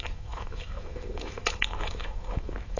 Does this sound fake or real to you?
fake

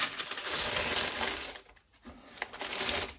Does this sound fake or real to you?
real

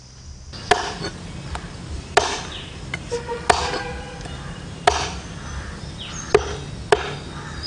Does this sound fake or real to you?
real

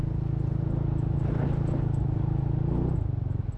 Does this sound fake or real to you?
real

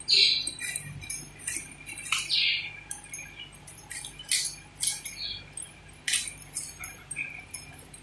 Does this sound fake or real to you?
real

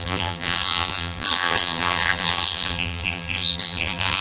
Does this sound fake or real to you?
fake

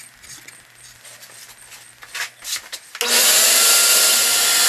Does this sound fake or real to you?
real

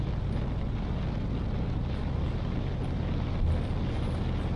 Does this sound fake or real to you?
real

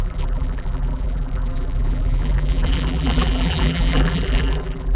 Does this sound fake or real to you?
fake